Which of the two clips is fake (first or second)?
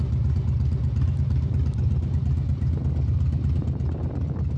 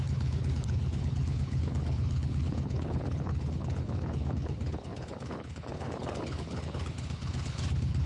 second